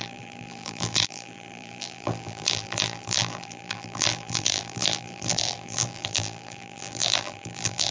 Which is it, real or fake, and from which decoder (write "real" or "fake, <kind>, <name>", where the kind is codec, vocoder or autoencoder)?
fake, vocoder, BigVGAN v2